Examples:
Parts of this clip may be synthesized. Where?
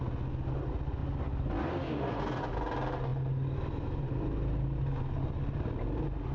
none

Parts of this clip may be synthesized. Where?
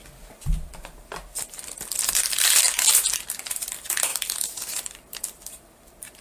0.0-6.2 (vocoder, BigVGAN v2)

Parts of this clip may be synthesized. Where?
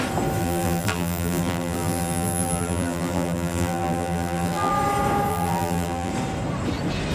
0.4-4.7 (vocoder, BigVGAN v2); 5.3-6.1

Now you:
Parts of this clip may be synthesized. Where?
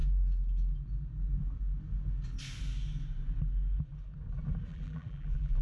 4.7-5.6 (vocoder, BigVGAN v2)